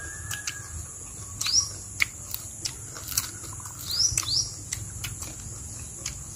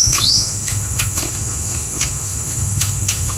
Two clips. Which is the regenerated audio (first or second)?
second